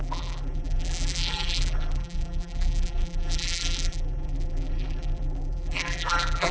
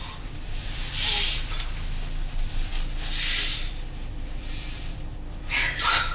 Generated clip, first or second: first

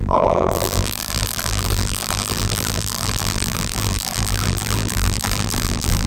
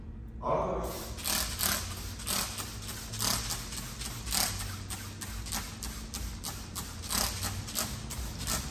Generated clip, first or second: first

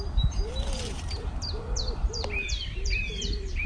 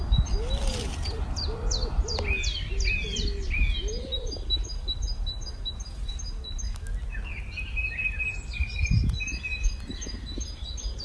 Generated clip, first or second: first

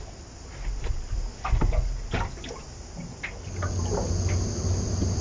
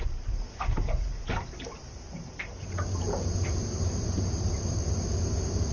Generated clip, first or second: second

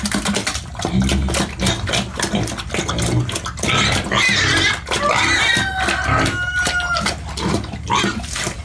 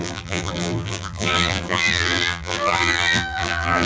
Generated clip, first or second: second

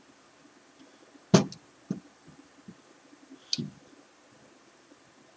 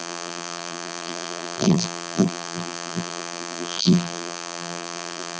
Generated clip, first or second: second